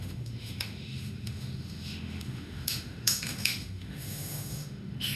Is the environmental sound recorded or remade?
remade